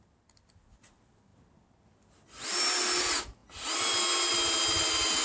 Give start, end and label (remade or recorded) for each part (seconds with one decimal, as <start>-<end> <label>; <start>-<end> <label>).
0.0-5.2 recorded